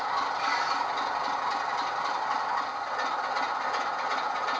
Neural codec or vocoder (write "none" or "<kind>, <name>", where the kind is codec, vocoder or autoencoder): none